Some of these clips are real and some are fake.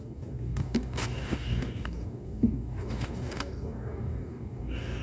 fake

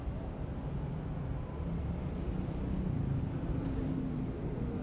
real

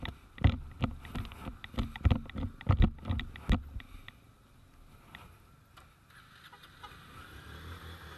real